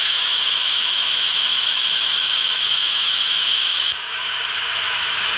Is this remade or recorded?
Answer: remade